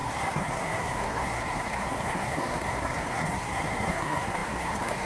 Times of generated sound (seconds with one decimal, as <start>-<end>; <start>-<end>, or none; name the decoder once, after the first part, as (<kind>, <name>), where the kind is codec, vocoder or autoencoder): 0.0-5.1 (codec, SNAC)